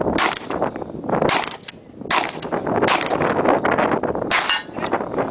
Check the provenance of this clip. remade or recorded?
recorded